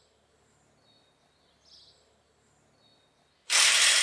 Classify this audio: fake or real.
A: real